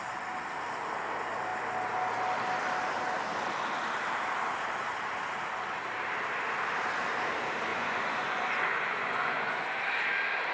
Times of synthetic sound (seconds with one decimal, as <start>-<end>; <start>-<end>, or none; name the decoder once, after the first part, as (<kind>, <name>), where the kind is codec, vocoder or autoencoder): 7.7-9.8 (vocoder, Vocos)